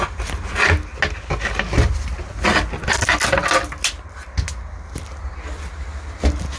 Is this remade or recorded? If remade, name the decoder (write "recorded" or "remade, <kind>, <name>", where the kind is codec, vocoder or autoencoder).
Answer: recorded